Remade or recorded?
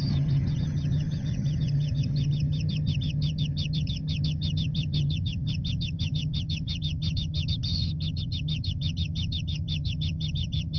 remade